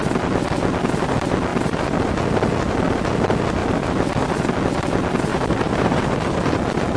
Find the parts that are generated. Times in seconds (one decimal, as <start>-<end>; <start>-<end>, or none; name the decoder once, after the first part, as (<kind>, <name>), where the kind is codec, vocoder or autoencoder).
5.3-6.0 (vocoder, BigVGAN v2)